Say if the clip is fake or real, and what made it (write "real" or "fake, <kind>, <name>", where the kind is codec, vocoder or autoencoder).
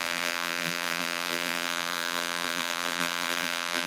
fake, vocoder, BigVGAN v2